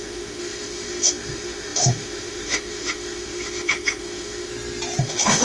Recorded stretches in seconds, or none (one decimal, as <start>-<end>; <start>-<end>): 4.5-5.0